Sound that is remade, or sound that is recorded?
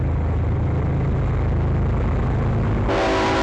recorded